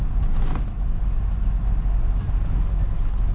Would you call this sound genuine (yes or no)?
yes